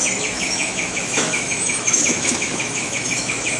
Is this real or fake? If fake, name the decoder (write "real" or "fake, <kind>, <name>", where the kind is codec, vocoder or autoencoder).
fake, autoencoder, DAC-VAE